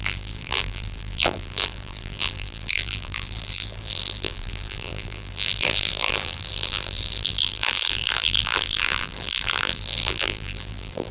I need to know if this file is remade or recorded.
remade